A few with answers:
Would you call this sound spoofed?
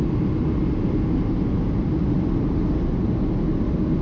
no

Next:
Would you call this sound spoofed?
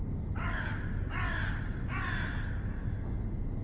no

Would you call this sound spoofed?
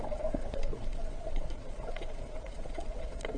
yes